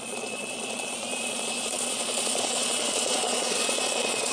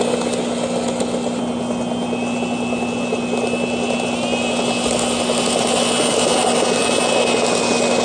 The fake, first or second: first